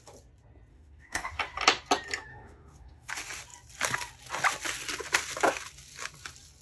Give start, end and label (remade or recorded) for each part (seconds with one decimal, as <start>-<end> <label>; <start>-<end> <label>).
0.0-0.7 recorded; 0.7-1.3 remade; 1.3-2.3 recorded; 2.3-3.1 remade; 3.1-6.6 recorded